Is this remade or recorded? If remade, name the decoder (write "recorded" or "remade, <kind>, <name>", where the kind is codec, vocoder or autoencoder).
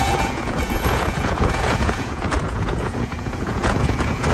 remade, vocoder, Vocos